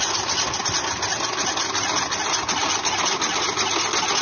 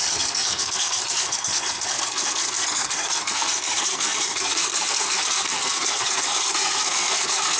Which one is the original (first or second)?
first